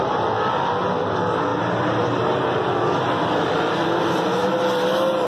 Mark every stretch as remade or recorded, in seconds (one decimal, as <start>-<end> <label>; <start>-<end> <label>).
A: 0.0-5.3 recorded